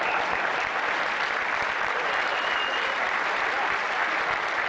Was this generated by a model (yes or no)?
no